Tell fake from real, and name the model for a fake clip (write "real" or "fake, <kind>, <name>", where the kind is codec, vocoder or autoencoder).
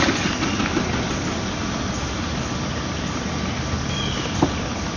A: real